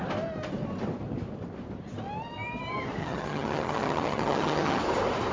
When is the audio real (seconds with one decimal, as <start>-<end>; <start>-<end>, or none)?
0.0-3.0; 4.8-5.3